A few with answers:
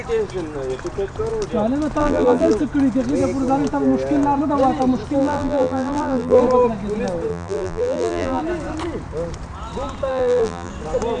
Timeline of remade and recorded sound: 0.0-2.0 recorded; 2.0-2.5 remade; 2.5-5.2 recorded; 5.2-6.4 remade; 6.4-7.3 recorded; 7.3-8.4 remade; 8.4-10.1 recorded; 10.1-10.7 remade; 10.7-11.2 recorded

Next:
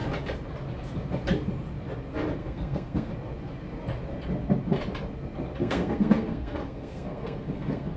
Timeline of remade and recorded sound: 0.0-2.4 recorded; 2.4-3.1 remade; 3.1-5.6 recorded; 5.6-8.0 remade

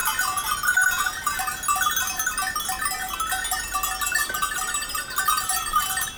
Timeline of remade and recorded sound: 0.0-1.0 recorded; 1.0-1.5 remade; 1.5-5.2 recorded; 5.2-6.2 remade

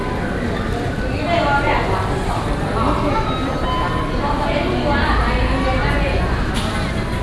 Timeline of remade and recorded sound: 0.0-5.8 recorded; 5.8-6.4 remade; 6.4-7.2 recorded